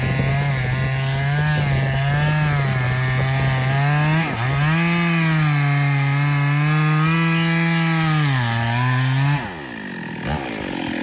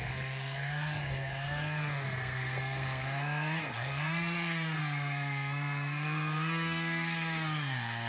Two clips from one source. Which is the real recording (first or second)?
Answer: first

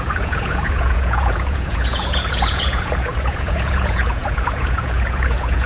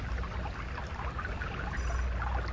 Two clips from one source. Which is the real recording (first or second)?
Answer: second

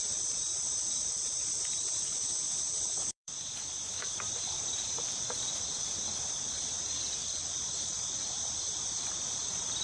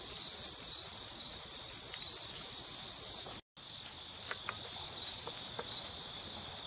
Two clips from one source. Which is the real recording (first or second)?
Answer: second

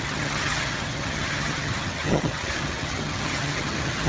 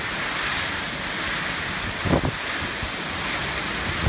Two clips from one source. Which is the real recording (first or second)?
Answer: second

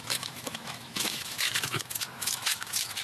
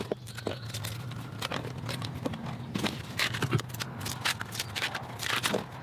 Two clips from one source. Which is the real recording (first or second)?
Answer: second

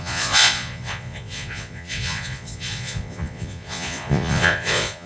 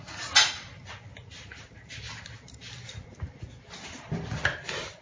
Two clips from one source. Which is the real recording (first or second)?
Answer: second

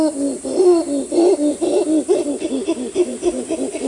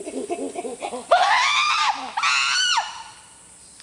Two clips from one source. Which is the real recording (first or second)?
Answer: second